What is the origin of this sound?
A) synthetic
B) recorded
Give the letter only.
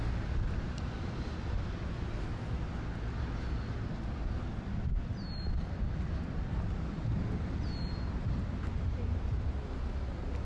B